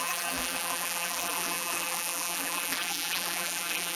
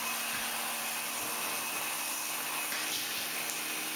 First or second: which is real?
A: second